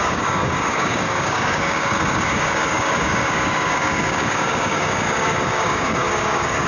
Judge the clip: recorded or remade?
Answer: remade